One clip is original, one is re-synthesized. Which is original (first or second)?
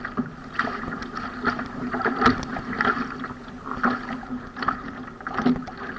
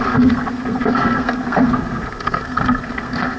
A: first